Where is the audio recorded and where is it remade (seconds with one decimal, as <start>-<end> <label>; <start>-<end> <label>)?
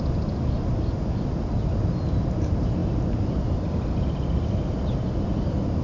0.0-5.8 recorded